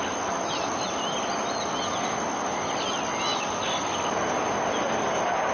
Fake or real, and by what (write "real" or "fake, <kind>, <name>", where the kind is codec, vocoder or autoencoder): real